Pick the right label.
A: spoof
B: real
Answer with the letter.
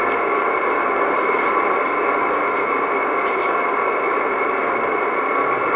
B